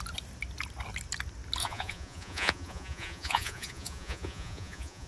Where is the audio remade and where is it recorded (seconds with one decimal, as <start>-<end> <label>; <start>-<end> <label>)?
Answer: 0.0-1.6 recorded; 1.6-5.1 remade

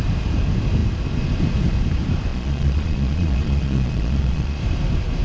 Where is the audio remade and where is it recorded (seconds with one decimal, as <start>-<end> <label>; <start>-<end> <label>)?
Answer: 0.0-2.3 recorded; 2.3-4.6 remade; 4.6-5.2 recorded